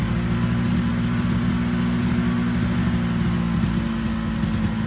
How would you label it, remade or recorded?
recorded